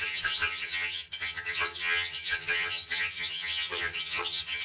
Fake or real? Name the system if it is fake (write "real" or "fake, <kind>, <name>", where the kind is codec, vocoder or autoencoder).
fake, vocoder, HiFi-GAN